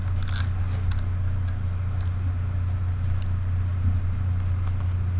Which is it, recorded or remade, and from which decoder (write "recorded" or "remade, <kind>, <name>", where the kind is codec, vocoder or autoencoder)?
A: recorded